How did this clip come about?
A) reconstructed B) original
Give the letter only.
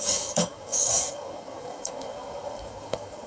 A